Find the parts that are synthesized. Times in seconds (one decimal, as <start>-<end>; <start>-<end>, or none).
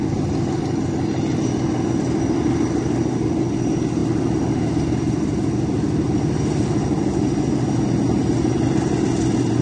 none